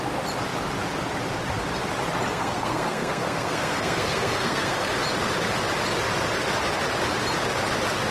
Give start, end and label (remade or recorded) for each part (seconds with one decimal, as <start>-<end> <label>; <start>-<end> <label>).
0.0-2.3 recorded; 2.3-4.9 remade; 4.9-8.1 recorded